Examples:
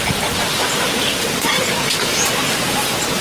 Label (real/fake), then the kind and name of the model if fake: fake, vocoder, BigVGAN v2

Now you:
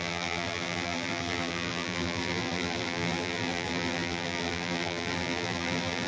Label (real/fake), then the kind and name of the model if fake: fake, vocoder, BigVGAN v2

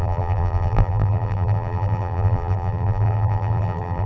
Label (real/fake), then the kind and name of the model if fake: fake, vocoder, BigVGAN v2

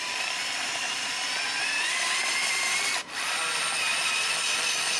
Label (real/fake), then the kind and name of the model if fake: fake, vocoder, BigVGAN v2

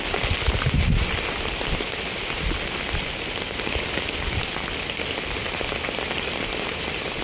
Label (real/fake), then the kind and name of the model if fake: fake, vocoder, BigVGAN v2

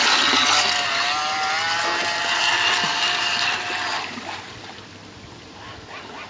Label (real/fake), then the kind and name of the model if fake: fake, vocoder, BigVGAN v2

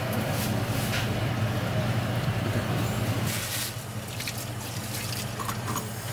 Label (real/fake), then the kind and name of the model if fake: real